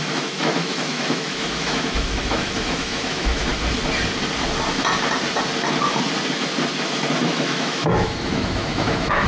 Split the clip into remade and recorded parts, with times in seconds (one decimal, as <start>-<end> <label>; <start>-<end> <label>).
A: 0.0-3.5 remade; 3.5-7.2 recorded; 7.2-9.3 remade